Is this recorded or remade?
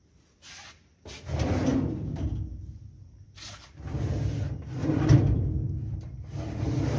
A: recorded